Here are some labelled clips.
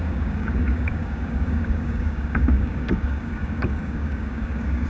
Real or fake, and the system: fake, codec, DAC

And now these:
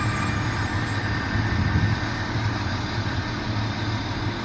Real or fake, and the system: real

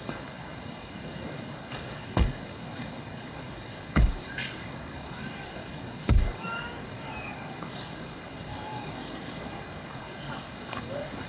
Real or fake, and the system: fake, codec, DAC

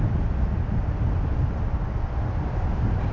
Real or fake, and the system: real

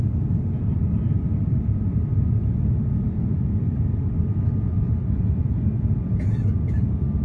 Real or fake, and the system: real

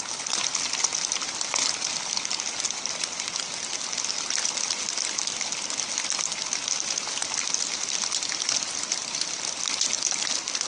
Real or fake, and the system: real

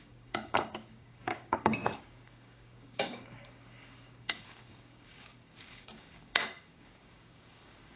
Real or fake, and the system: fake, codec, DAC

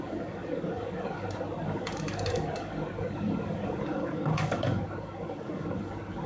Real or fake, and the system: fake, codec, DAC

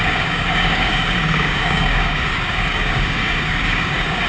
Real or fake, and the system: fake, codec, DAC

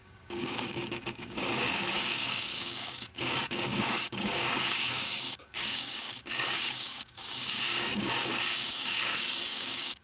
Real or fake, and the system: fake, codec, DAC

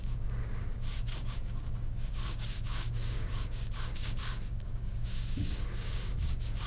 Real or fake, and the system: fake, codec, DAC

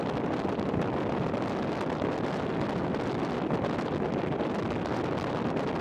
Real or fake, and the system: real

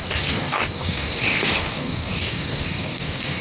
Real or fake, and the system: fake, codec, DAC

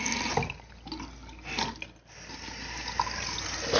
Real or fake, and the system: real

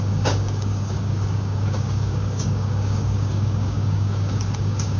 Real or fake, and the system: fake, codec, DAC